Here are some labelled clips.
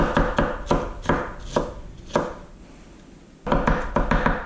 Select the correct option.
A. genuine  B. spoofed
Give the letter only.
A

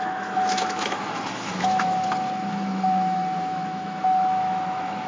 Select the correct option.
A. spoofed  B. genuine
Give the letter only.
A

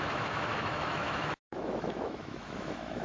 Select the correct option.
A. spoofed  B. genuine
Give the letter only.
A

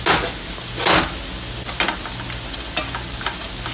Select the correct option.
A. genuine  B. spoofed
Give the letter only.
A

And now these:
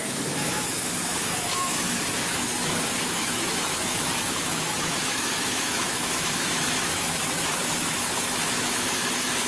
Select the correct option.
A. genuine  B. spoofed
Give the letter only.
B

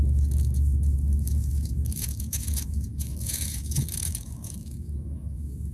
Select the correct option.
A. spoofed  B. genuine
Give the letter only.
A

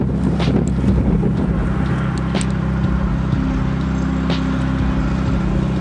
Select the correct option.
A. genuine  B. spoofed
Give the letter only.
A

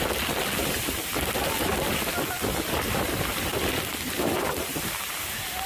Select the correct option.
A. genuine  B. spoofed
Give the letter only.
A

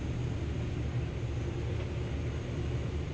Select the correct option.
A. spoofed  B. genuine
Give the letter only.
B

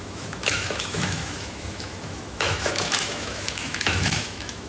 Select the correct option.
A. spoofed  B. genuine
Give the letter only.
A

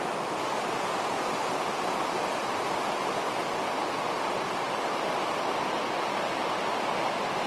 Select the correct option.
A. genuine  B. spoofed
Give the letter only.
A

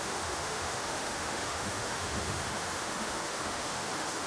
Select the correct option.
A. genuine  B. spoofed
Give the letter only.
B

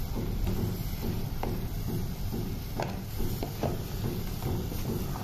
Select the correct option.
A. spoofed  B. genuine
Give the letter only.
B